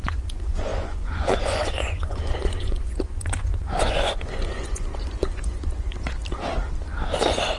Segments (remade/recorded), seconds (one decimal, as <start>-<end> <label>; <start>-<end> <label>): 0.0-6.2 remade; 6.2-7.6 recorded